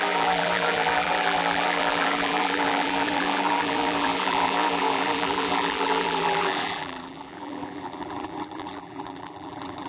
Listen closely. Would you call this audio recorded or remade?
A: remade